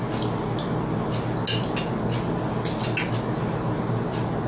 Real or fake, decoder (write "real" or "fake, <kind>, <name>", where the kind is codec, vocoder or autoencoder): real